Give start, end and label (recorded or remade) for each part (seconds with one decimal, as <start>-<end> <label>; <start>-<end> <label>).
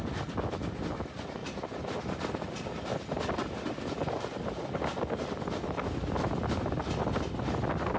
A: 0.0-1.4 recorded; 1.4-2.4 remade; 2.4-8.0 recorded